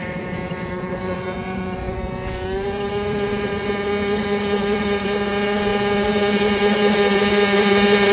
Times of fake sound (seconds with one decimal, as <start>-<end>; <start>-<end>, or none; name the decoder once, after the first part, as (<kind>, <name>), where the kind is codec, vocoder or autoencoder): 0.0-8.1 (vocoder, Vocos)